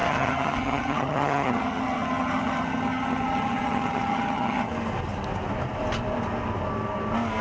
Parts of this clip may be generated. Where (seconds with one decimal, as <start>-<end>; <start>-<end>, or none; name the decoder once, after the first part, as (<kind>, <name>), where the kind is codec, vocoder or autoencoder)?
0.0-4.7 (vocoder, HiFi-GAN)